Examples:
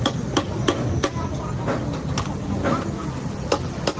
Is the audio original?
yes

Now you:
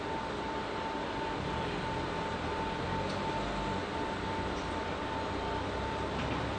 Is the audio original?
yes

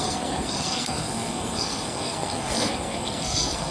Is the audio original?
no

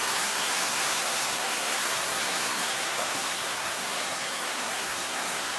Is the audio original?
no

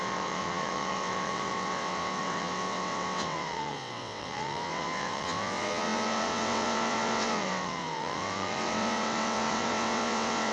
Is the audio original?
no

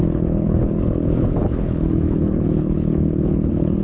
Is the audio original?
no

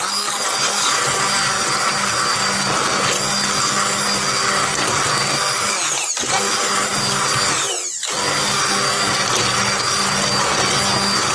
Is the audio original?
yes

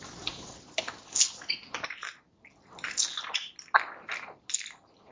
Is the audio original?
yes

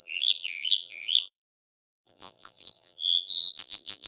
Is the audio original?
no